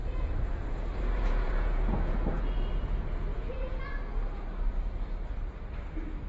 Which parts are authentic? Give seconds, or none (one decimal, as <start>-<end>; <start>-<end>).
3.8-6.3